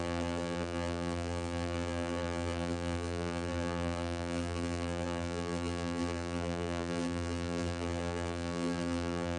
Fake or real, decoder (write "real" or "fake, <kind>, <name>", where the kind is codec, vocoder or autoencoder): fake, vocoder, BigVGAN v2